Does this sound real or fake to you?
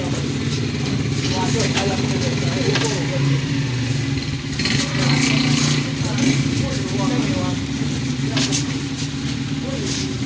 real